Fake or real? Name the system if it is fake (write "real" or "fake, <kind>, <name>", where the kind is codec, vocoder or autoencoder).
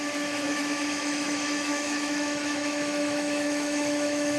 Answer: fake, autoencoder, DAC-VAE